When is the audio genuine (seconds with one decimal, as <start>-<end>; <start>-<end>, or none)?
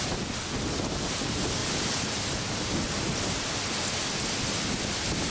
0.0-5.3